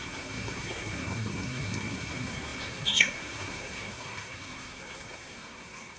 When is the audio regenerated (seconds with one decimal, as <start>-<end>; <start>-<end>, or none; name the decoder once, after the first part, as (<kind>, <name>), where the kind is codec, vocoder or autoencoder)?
0.0-6.0 (codec, SNAC)